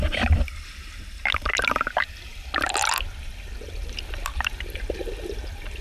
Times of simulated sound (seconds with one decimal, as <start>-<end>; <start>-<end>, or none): none